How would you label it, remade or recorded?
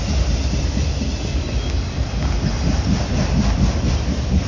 recorded